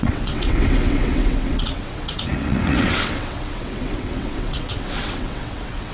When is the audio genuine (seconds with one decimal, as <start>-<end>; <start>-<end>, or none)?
none